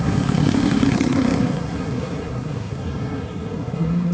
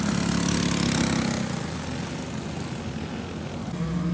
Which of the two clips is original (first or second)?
second